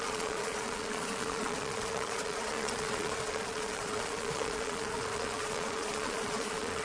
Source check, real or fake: fake